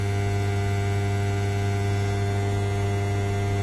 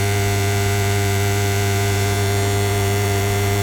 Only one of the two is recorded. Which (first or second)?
first